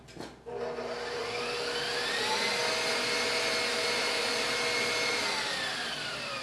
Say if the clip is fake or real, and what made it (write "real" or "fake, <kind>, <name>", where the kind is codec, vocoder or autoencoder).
real